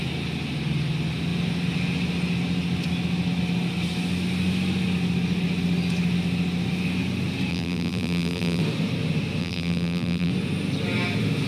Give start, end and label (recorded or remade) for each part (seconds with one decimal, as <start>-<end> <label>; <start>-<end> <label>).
0.0-7.5 recorded; 7.5-8.6 remade; 8.6-9.4 recorded; 9.4-10.3 remade; 10.3-11.5 recorded

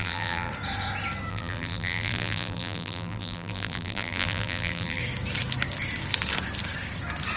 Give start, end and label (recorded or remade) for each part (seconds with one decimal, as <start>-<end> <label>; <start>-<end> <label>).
0.0-0.5 remade; 0.5-1.3 recorded; 1.3-5.0 remade; 5.0-7.4 recorded

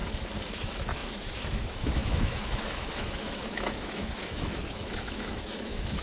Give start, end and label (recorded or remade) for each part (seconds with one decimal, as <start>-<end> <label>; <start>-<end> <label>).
0.0-0.5 recorded; 0.5-6.0 remade

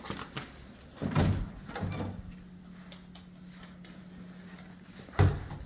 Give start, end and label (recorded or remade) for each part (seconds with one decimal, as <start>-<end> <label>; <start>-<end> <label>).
0.0-5.7 recorded